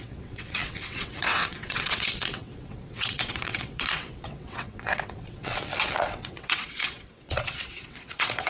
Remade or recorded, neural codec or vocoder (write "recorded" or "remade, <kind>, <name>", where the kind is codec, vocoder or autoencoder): remade, vocoder, WaveNeXt